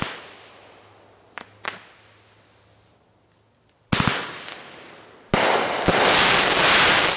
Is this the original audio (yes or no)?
yes